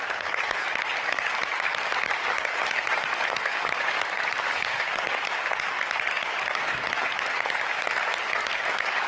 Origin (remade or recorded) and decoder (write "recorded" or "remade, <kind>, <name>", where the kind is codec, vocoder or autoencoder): remade, codec, DAC